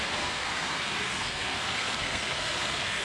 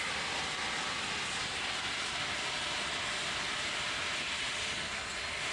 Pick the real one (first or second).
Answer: second